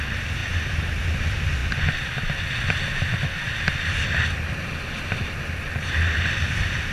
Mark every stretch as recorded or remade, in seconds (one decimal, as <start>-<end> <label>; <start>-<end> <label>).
0.0-6.9 recorded